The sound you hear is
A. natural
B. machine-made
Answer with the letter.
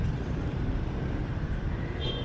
B